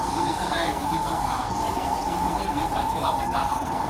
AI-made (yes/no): yes